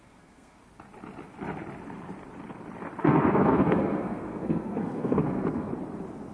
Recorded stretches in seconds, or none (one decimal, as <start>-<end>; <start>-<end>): 0.6-3.0; 5.7-6.3